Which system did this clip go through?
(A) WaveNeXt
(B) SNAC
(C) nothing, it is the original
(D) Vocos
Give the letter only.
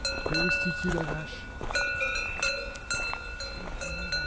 C